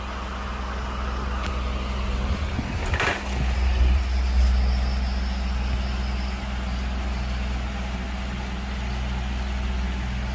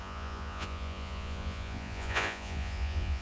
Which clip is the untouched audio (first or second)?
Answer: first